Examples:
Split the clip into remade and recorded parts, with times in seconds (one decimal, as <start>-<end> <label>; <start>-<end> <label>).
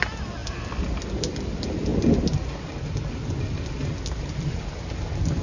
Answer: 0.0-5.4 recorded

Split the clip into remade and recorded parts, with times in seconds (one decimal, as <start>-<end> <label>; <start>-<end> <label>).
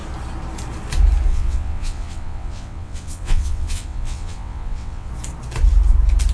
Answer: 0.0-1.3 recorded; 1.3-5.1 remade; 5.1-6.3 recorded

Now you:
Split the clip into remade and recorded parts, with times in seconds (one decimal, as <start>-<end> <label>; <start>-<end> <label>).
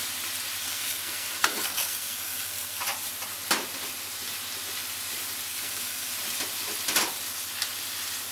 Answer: 0.0-0.6 recorded; 0.6-2.8 remade; 2.8-5.5 recorded; 5.5-6.1 remade; 6.1-8.3 recorded